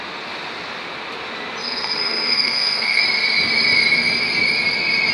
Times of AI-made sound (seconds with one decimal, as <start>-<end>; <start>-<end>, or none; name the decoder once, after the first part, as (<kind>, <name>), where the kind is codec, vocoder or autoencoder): 1.6-3.0 (codec, SNAC)